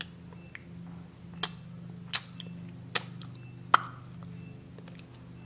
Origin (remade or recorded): recorded